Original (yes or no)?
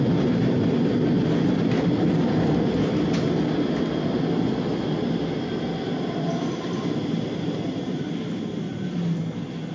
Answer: yes